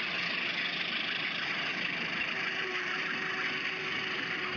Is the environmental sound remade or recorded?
recorded